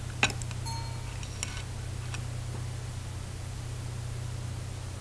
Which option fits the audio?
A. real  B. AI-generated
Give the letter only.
A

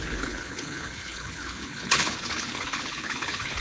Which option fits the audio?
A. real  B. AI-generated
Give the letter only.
B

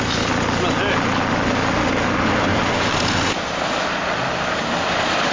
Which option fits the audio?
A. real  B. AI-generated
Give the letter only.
A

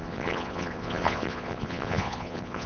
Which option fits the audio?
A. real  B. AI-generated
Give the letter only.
B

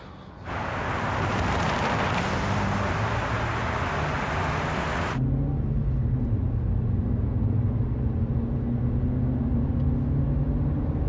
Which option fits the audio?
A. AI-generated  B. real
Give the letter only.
B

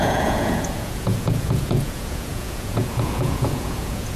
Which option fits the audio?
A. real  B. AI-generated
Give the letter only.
B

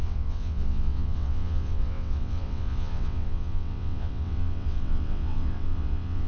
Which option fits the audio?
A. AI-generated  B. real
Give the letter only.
A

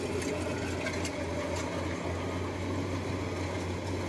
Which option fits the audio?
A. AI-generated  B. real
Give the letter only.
B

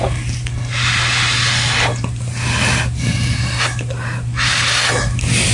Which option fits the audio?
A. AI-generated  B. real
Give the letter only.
B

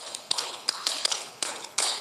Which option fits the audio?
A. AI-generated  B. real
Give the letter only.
A